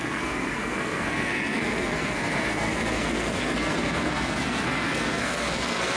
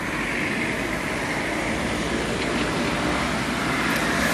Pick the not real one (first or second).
first